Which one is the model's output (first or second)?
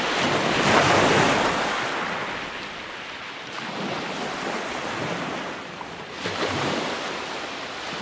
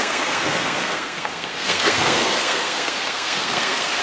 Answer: second